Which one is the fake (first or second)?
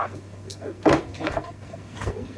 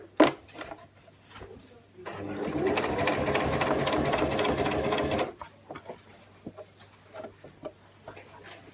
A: first